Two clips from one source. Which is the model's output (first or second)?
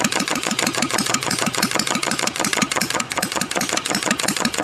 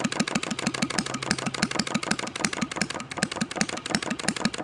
first